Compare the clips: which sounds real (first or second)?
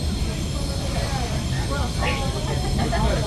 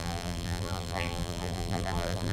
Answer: first